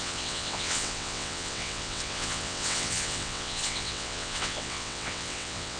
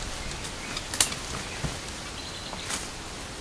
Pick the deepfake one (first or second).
first